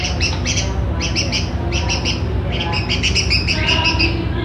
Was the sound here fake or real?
real